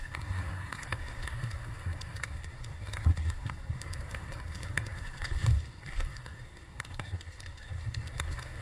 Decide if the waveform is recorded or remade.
remade